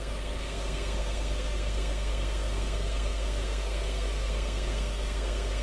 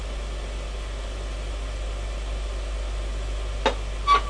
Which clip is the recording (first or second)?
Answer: second